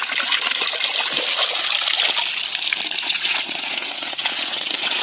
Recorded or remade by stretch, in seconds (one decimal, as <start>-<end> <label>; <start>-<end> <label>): 0.0-3.0 recorded; 3.0-5.0 remade